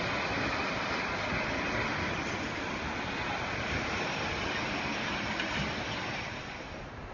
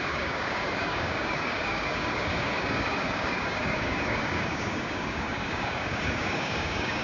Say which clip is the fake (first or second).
second